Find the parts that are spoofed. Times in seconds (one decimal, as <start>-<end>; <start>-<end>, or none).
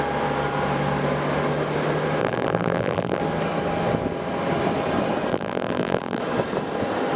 2.2-3.2; 5.3-6.2